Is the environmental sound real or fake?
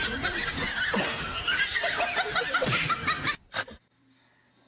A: real